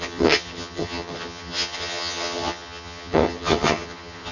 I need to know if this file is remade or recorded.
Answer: remade